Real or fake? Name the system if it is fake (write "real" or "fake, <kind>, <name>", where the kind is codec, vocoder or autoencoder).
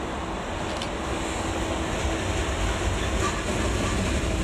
real